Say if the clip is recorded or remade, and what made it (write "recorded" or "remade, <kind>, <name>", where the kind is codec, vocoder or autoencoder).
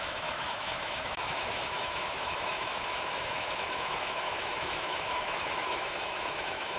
remade, autoencoder, DAC-VAE